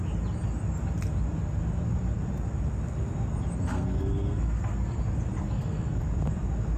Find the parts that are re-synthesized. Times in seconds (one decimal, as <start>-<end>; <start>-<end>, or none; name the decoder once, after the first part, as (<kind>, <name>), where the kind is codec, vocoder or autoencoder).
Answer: 3.7-5.0 (codec, SNAC); 5.4-6.0